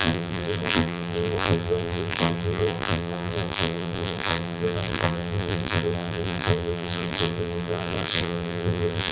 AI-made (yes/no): yes